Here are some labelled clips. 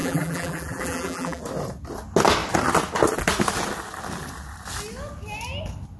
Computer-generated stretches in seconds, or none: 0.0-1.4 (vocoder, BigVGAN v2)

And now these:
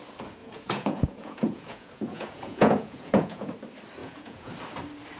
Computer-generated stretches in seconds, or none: 0.4-3.5 (vocoder, Vocos); 4.0-4.5

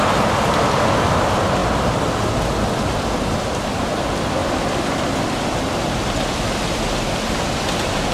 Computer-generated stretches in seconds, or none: 4.4-5.4 (vocoder, BigVGAN v2)

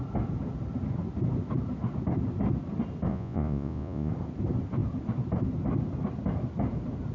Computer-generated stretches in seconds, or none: 3.1-4.1 (vocoder, Vocos)

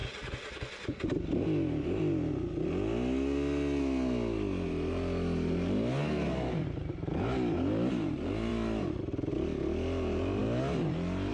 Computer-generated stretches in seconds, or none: none

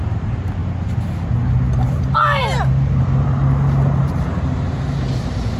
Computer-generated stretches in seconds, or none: 0.0-0.6 (vocoder, BigVGAN v2); 1.9-2.4; 3.0-3.4; 4.0-5.6

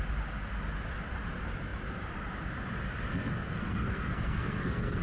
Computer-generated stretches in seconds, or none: 3.1-5.0 (codec, SNAC)

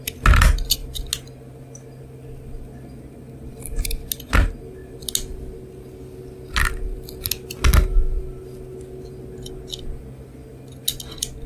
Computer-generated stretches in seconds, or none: none